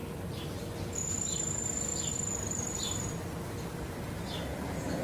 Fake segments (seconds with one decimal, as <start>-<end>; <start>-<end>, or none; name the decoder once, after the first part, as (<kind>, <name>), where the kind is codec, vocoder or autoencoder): none